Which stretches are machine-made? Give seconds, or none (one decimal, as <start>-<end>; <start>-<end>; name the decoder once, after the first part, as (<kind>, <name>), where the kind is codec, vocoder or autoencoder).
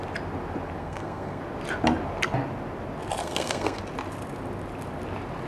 0.8-1.4 (codec, SNAC); 3.2-3.8